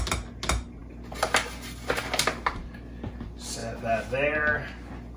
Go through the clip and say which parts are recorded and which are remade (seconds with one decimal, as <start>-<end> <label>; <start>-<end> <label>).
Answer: 0.0-5.2 recorded